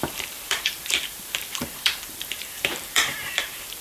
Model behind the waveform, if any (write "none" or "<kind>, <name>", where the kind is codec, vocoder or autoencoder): vocoder, BigVGAN v2